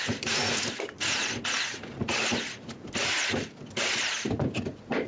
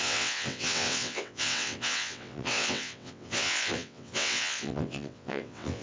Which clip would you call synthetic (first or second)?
second